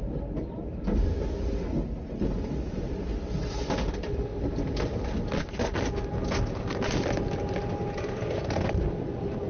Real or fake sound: real